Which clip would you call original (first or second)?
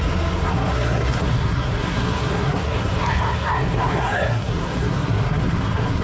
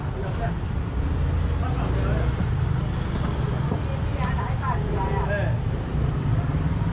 second